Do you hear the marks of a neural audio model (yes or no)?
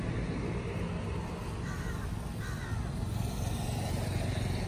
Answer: no